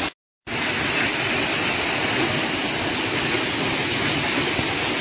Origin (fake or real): real